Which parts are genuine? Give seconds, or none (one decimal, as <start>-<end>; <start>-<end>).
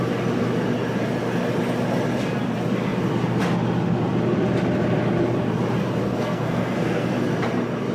0.0-6.0; 7.1-7.9